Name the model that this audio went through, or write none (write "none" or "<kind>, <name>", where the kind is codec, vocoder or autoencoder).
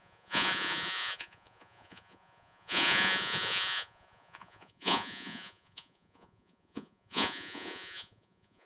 vocoder, Vocos